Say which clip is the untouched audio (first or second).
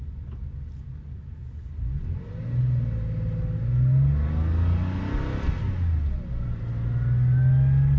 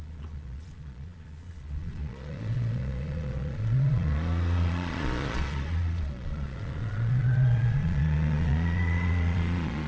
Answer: first